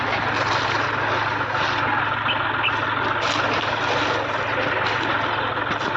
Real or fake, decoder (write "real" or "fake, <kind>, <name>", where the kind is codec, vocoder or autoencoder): real